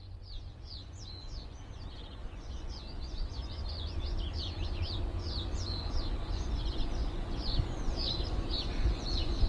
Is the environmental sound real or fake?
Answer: fake